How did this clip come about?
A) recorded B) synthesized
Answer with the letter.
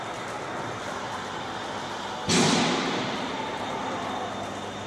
A